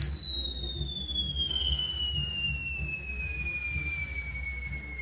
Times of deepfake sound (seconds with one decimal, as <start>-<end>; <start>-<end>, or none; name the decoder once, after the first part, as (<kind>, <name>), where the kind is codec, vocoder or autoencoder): 1.5-1.9 (codec, SNAC)